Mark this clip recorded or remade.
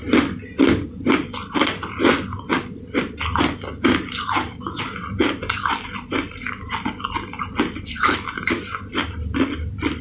recorded